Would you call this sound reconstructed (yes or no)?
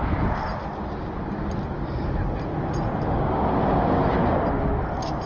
no